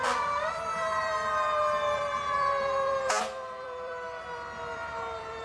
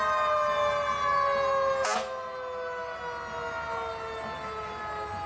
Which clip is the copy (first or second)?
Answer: first